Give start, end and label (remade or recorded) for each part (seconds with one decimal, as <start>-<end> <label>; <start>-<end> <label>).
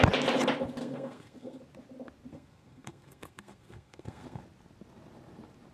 0.0-0.8 recorded; 0.8-1.6 remade; 1.6-2.3 recorded; 2.3-4.4 remade; 4.4-5.7 recorded